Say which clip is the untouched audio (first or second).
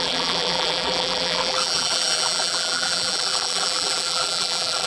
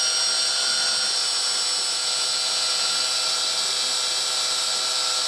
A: second